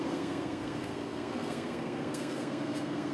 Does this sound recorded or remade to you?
remade